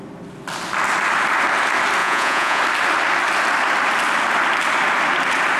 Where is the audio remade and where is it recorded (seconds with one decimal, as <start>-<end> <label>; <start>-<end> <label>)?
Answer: 0.0-2.0 recorded; 2.0-2.6 remade; 2.6-5.6 recorded